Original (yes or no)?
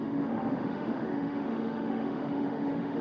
no